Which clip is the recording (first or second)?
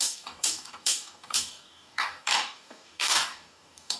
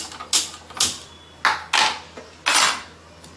second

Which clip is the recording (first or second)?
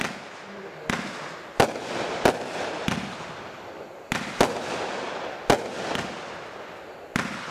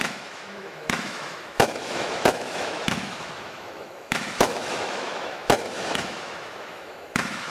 first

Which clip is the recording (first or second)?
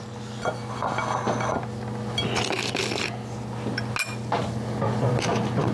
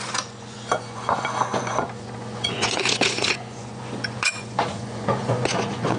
first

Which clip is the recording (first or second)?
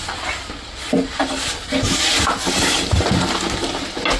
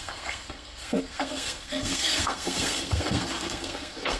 first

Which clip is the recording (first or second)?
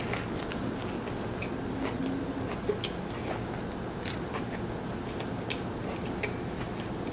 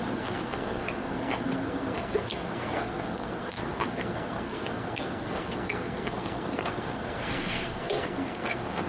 first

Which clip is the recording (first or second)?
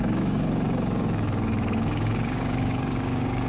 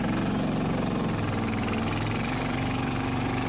second